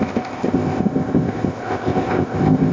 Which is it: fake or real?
fake